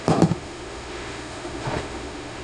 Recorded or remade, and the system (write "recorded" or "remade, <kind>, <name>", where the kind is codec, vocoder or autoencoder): remade, autoencoder, DAC-VAE